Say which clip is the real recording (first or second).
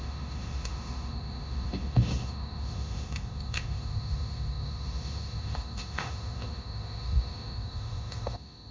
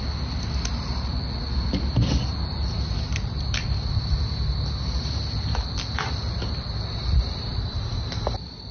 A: second